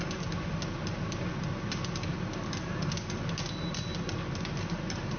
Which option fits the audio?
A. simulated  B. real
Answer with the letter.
B